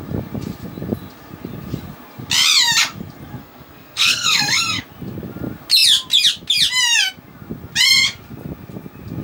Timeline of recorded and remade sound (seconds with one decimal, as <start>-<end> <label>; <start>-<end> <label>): 0.0-3.4 recorded; 3.4-4.8 remade; 4.8-9.2 recorded